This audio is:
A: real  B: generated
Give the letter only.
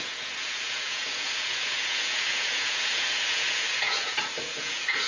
B